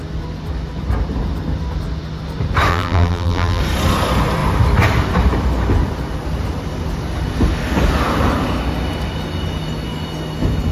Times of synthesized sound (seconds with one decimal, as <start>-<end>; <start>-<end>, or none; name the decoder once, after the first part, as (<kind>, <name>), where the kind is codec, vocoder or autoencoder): 2.7-3.6 (vocoder, BigVGAN v2)